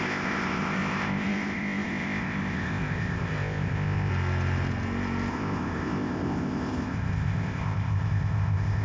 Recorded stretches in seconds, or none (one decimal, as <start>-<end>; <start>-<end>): 4.1-5.3